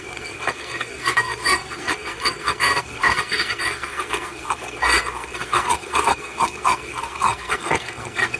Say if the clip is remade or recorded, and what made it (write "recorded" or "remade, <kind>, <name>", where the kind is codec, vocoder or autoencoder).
remade, codec, SNAC